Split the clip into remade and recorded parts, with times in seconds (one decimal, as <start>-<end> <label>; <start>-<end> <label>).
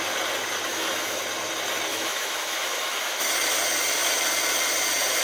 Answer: 0.0-0.7 recorded; 0.7-1.2 remade; 1.2-1.9 recorded; 1.9-3.3 remade; 3.3-5.2 recorded